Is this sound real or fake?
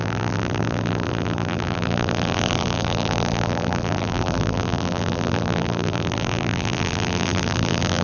fake